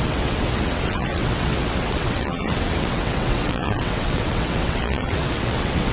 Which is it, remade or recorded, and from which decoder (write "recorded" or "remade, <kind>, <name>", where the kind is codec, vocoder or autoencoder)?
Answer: remade, vocoder, WaveNeXt